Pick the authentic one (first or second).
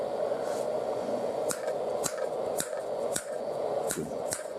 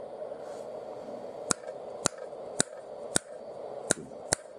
second